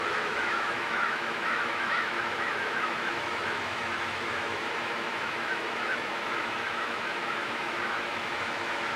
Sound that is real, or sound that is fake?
fake